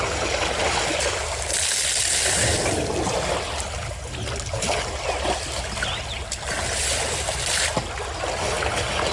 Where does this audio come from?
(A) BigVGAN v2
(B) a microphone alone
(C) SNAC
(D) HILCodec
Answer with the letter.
B